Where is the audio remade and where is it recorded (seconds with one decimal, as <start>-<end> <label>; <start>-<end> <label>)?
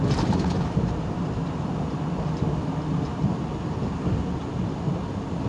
0.0-5.5 recorded